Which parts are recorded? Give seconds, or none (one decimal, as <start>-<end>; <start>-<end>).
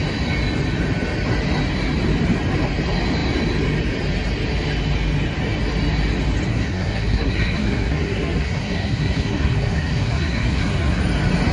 0.0-6.5; 11.0-11.5